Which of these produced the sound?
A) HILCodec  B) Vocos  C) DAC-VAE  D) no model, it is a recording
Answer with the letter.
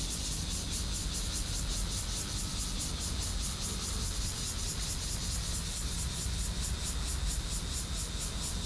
D